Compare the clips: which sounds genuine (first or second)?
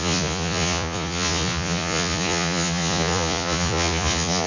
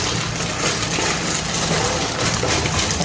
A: second